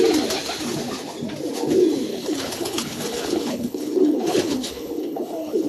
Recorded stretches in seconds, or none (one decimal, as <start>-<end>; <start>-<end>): 0.0-2.1